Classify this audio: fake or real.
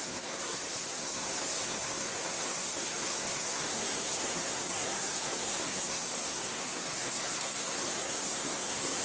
fake